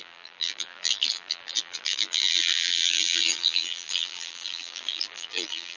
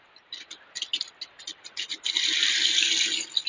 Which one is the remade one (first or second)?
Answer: first